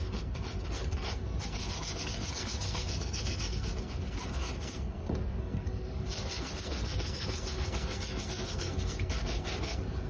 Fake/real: fake